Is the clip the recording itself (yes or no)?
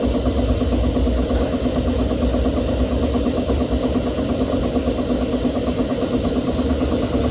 yes